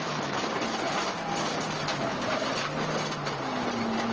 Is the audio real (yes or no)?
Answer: yes